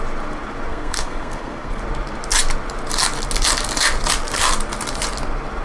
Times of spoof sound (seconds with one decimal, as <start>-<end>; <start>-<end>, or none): 0.7-1.8